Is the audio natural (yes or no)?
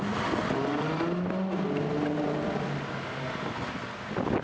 yes